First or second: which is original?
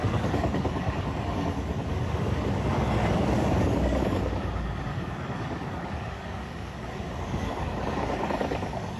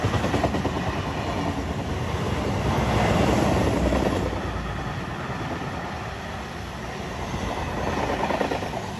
second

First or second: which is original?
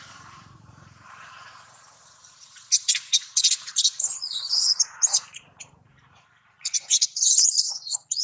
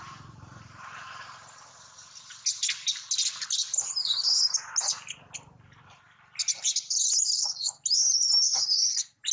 second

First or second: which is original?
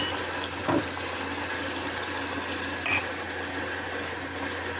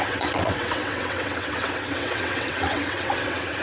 first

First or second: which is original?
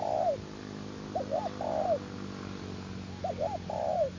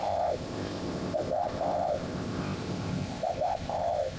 first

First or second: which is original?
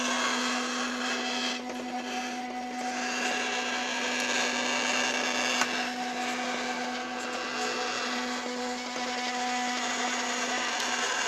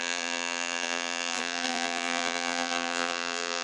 first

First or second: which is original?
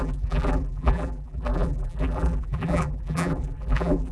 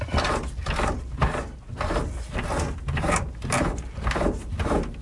second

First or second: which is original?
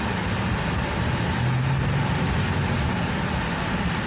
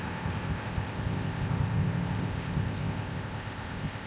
first